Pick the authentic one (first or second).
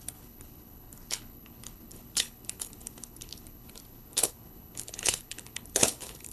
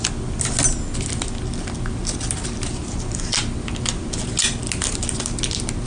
second